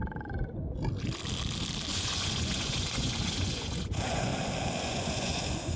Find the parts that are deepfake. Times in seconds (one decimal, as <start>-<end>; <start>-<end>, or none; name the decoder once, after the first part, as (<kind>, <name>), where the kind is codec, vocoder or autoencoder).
1.9-4.3 (vocoder, Vocos); 4.8-5.8